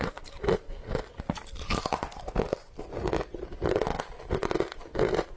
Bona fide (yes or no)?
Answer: yes